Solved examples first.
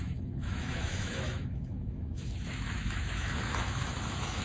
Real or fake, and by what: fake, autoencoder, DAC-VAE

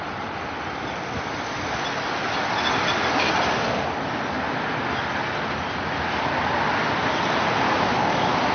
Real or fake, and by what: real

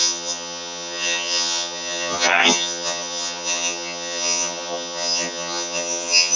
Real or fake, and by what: fake, vocoder, HiFi-GAN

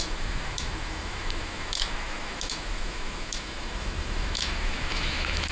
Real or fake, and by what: fake, autoencoder, DAC-VAE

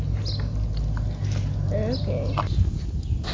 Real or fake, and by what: real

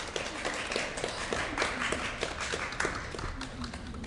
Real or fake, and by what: real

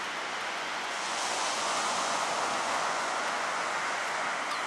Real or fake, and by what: fake, vocoder, Vocos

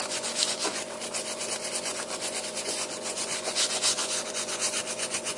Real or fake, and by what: fake, vocoder, Vocos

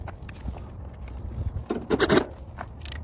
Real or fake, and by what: real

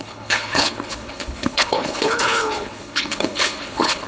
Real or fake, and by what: fake, codec, HILCodec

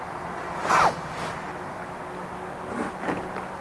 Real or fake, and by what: real